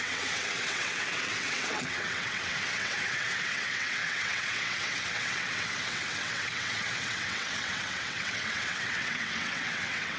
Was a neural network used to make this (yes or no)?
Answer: yes